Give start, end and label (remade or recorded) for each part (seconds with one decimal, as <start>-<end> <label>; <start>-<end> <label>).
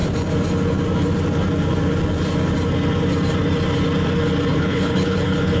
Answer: 0.0-4.5 recorded; 4.5-5.6 remade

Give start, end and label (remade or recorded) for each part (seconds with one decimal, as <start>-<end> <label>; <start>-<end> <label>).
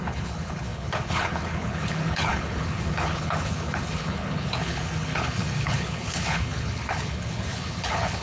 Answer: 0.0-8.2 remade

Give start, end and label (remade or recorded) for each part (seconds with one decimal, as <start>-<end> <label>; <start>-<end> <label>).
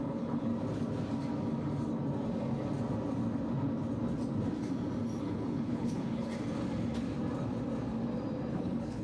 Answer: 0.0-0.5 remade; 0.5-5.2 recorded; 5.2-6.3 remade; 6.3-8.5 recorded; 8.5-9.0 remade